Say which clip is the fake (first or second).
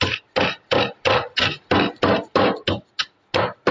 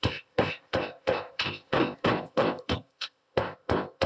second